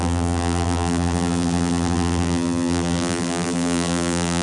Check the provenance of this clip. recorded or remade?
remade